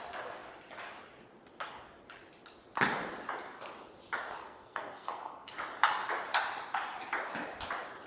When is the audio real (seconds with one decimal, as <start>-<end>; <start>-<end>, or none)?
0.0-4.4; 5.5-8.1